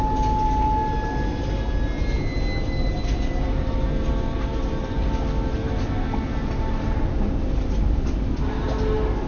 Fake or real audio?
real